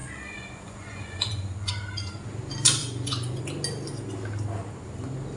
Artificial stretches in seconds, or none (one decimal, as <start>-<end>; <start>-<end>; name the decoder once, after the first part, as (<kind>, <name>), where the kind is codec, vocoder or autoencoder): 0.0-1.7 (vocoder, Vocos); 2.8-3.4